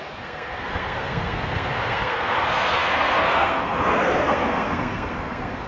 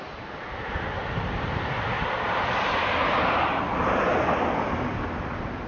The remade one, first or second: first